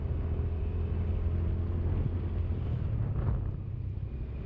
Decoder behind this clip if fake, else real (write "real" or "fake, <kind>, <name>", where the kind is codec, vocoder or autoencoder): real